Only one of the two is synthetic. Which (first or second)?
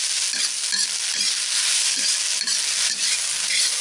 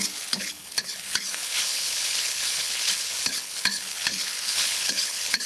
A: second